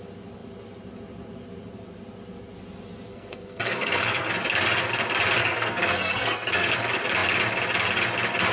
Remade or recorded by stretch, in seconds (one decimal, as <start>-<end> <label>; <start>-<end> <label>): 0.0-3.1 recorded; 3.1-4.3 remade; 4.3-5.4 recorded; 5.4-6.7 remade; 6.7-8.5 recorded